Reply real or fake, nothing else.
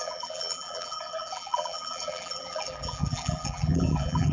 fake